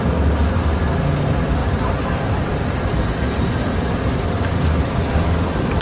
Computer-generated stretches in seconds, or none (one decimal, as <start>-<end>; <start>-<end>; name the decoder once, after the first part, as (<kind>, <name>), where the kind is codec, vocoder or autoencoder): 1.6-4.9 (vocoder, BigVGAN v2)